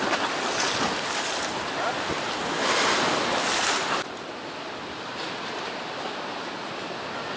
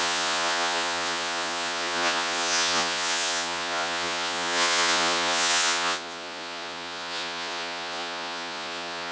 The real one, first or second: first